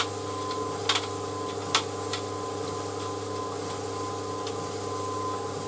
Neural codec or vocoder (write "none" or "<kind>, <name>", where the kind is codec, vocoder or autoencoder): none